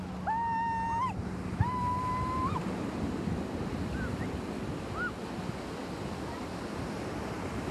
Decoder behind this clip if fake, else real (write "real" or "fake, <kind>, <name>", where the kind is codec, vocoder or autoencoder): real